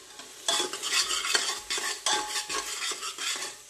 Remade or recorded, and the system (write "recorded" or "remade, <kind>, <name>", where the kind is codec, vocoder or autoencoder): recorded